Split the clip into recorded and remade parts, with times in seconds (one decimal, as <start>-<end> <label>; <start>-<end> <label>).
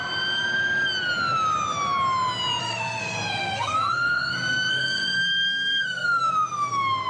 0.0-2.6 recorded; 2.6-6.3 remade; 6.3-7.1 recorded